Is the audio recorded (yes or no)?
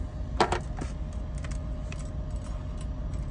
yes